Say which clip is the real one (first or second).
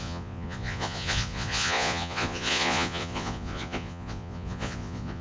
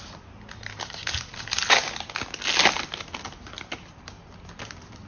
second